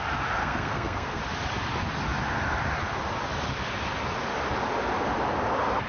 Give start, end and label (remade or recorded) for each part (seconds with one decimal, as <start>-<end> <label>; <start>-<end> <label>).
0.0-0.4 recorded; 0.4-1.2 remade; 1.2-5.9 recorded